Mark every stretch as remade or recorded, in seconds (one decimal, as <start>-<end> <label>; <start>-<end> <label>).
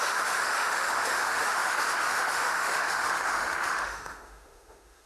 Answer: 0.0-5.1 remade